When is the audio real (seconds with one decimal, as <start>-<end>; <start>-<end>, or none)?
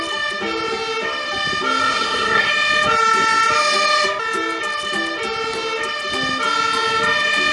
0.0-1.8; 2.5-7.5